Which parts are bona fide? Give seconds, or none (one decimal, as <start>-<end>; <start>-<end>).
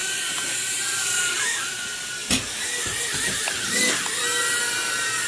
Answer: 1.6-2.9; 3.8-5.3